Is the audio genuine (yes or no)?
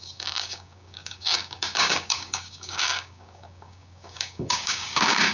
no